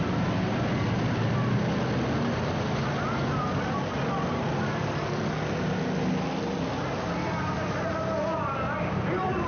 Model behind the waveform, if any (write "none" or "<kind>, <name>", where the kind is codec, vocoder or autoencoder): none